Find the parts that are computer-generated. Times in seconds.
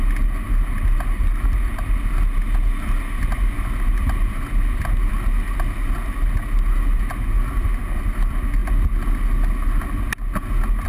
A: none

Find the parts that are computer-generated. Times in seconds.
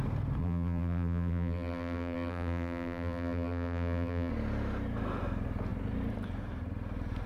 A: 0.4-4.3 (vocoder, BigVGAN v2)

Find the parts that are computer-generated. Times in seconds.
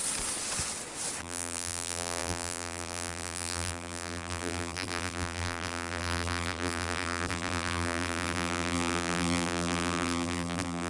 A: 1.2-10.9 (vocoder, BigVGAN v2)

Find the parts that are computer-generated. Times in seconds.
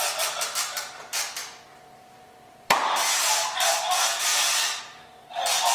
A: 1.4-3.7 (vocoder, BigVGAN v2)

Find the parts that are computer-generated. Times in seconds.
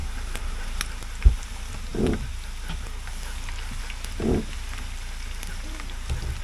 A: 0.0-0.8 (vocoder, BigVGAN v2)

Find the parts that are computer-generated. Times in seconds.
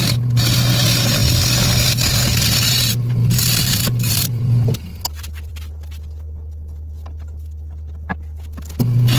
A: 3.2-5.5 (vocoder, BigVGAN v2)